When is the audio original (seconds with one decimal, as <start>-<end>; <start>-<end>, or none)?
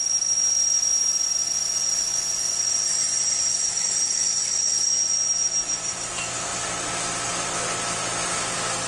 0.0-3.5; 4.9-8.9